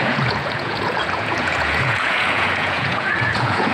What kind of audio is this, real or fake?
fake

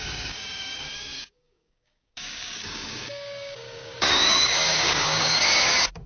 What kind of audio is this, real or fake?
fake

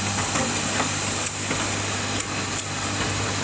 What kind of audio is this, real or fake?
real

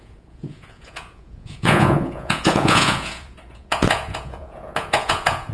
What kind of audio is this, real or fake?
fake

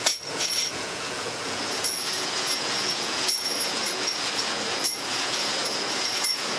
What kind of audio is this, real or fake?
fake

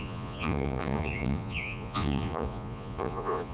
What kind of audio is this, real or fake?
fake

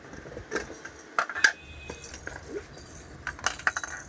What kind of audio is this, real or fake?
real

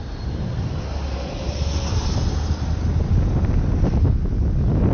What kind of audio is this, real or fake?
real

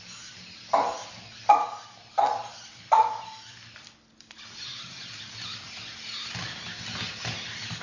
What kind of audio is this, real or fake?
real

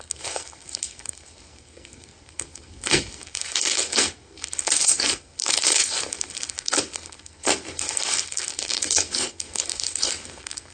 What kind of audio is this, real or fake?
fake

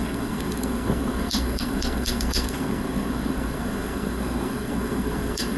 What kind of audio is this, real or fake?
fake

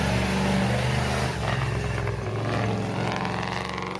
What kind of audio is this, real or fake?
real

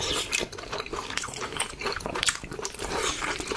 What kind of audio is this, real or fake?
fake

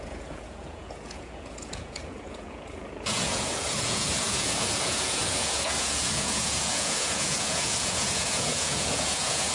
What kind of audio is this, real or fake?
fake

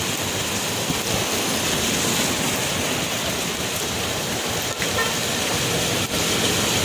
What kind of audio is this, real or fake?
real